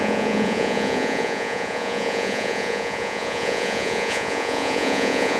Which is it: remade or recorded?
remade